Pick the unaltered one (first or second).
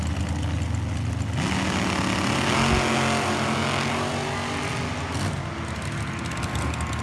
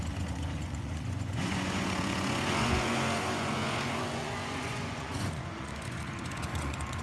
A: first